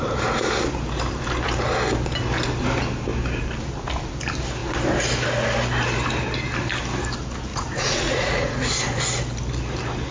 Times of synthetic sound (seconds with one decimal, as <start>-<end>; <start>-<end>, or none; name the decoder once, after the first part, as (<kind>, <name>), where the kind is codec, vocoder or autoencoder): 7.5-8.7 (vocoder, Vocos)